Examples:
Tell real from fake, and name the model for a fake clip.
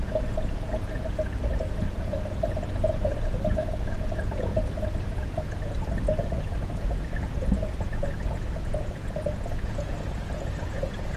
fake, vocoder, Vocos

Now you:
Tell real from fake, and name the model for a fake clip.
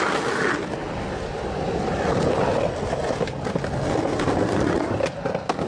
real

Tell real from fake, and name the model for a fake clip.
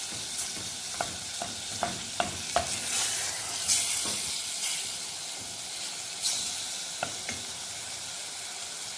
real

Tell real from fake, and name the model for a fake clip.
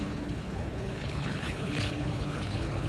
fake, codec, HILCodec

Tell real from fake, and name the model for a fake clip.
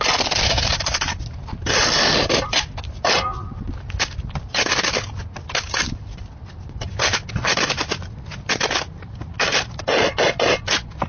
real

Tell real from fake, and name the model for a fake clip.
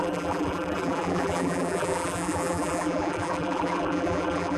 fake, vocoder, BigVGAN v2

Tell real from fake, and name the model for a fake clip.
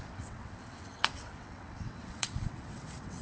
fake, vocoder, WaveNeXt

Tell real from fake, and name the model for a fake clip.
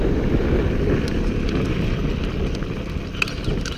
real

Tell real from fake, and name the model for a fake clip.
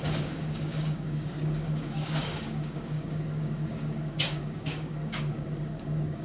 fake, codec, DAC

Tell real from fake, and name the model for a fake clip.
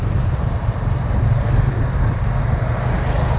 real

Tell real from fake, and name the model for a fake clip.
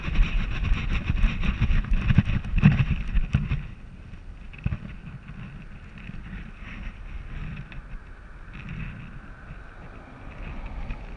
real